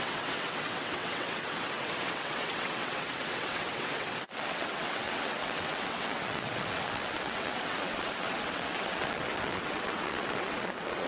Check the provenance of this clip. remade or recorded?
remade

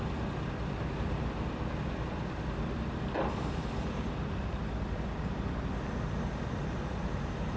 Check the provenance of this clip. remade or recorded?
recorded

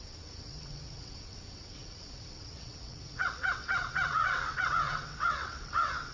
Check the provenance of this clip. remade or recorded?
remade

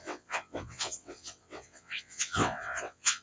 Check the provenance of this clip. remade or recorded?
remade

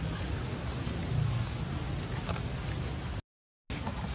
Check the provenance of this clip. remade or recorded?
recorded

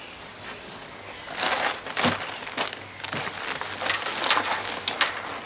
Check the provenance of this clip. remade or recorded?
recorded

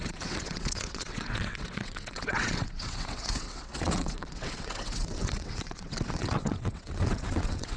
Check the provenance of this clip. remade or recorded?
remade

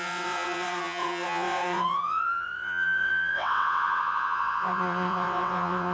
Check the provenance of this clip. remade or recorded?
remade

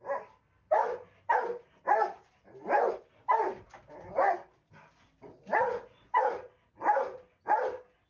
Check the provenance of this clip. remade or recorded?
recorded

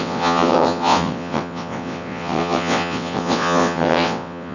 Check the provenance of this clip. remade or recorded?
remade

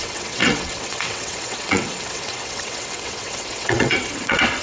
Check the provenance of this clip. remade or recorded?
remade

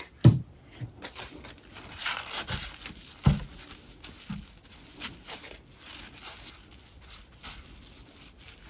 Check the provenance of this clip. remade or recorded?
recorded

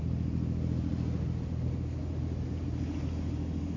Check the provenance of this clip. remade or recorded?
recorded